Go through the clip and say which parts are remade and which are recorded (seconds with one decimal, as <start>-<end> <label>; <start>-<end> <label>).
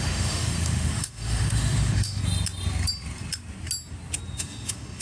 0.0-2.2 remade; 2.2-4.4 recorded; 4.4-5.0 remade